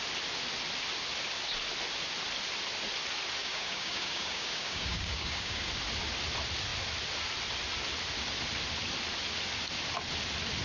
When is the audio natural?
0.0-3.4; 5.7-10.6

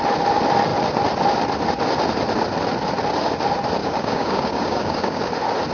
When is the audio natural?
0.0-3.8; 5.2-5.7